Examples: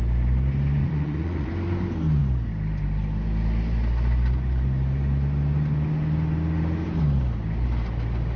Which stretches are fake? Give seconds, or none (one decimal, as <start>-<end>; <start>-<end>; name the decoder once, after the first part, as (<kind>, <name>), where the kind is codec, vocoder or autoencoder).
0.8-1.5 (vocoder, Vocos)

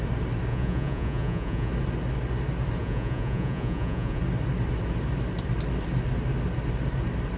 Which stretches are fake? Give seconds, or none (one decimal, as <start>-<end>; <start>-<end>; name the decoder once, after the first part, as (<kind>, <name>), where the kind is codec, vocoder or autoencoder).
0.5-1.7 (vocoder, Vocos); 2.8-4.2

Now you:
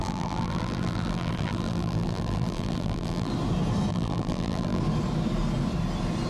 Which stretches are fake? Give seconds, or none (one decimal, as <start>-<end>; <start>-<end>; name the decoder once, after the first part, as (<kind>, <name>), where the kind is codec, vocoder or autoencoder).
0.0-3.3 (vocoder, BigVGAN v2); 3.9-4.8

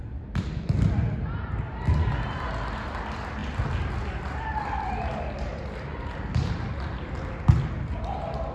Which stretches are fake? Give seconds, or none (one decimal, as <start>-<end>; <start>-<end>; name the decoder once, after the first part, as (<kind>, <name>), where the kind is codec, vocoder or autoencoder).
none

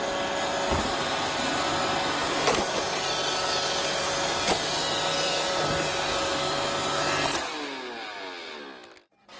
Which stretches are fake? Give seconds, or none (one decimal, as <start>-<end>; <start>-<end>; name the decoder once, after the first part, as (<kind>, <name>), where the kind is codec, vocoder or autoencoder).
none

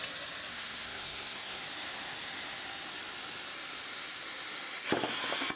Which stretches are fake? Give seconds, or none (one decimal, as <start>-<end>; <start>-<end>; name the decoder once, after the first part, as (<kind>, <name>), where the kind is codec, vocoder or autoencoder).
0.5-1.6 (codec, SNAC)